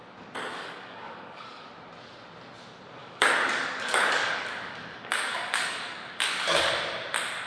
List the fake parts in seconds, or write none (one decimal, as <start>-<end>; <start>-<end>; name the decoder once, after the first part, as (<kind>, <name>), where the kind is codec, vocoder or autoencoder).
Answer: 0.5-1.7 (codec, DAC); 3.0-6.7